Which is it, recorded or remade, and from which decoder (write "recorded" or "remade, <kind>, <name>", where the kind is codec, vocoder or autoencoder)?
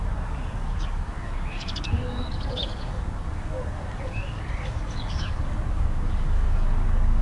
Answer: remade, codec, DAC